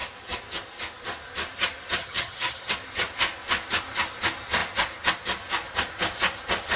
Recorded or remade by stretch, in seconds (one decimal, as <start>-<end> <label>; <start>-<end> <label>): 0.0-2.0 recorded; 2.0-2.7 remade; 2.7-6.8 recorded